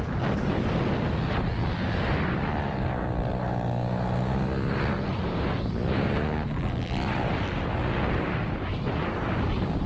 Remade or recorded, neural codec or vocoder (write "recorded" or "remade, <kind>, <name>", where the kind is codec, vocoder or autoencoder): recorded